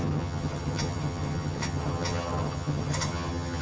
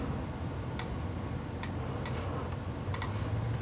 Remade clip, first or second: first